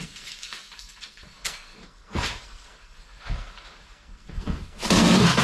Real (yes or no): no